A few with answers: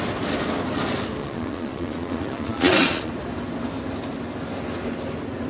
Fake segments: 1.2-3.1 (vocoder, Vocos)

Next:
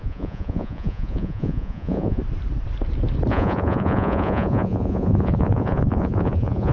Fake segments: 0.0-2.2 (vocoder, Vocos); 3.3-6.7